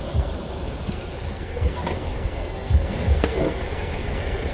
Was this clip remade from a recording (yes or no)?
yes